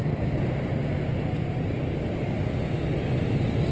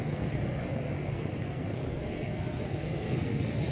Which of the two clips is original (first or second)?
first